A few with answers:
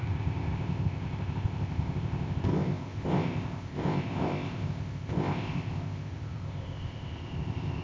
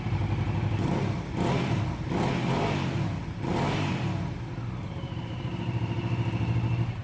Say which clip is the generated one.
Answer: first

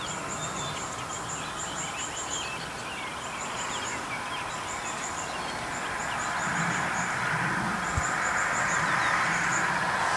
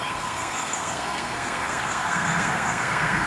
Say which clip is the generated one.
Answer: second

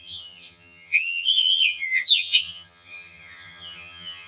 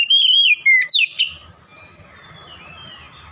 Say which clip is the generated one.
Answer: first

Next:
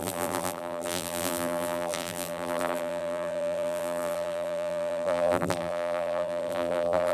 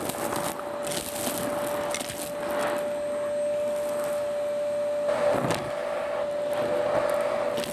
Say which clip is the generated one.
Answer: first